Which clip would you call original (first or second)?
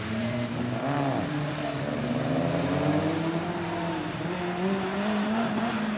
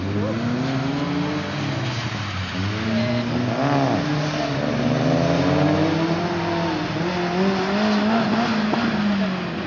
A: second